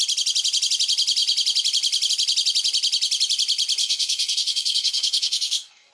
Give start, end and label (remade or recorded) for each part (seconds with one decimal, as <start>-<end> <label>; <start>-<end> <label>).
0.0-3.8 recorded; 3.8-5.9 remade